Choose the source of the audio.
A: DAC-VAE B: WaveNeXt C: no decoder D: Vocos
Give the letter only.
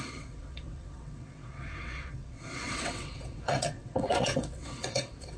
B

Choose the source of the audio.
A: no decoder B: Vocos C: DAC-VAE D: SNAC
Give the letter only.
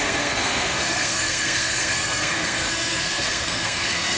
D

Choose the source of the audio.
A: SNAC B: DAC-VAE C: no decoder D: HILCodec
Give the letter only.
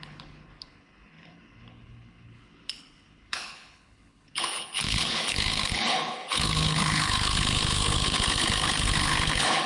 D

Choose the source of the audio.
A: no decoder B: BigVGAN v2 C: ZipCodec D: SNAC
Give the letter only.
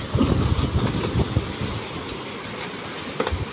A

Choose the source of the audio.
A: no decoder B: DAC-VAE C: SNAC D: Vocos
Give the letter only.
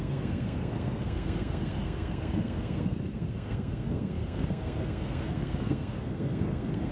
C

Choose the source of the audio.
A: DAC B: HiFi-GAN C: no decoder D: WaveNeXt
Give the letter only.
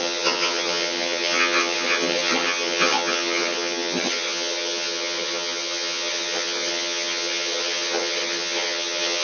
B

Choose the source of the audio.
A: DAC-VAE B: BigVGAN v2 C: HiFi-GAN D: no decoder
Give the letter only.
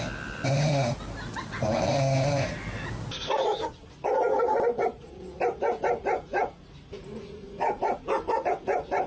D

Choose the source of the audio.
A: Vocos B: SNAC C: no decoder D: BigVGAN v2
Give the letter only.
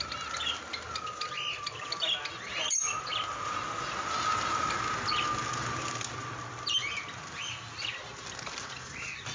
C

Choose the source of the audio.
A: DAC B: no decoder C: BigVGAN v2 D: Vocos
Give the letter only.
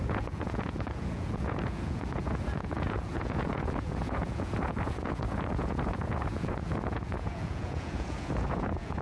D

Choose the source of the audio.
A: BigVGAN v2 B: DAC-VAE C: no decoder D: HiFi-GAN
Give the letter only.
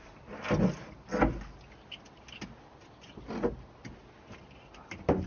C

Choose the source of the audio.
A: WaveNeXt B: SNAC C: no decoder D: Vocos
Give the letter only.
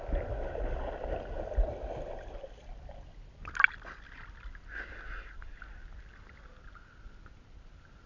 C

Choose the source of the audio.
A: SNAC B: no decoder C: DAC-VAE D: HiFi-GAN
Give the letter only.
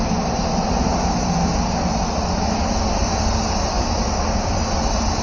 B